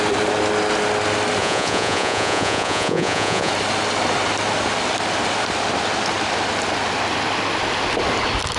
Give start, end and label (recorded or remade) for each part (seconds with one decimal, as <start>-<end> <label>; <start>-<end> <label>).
0.0-1.4 recorded; 1.4-3.5 remade; 3.5-8.6 recorded